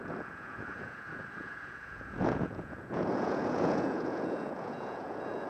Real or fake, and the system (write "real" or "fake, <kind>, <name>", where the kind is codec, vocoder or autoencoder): fake, vocoder, Vocos